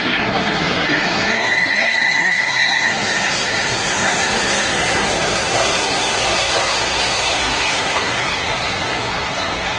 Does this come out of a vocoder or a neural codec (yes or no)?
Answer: yes